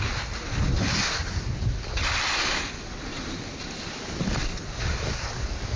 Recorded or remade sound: recorded